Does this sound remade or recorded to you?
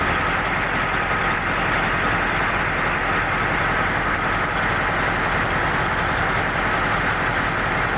recorded